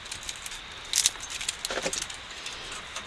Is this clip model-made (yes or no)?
no